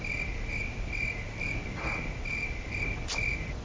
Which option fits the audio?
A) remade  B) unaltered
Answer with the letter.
B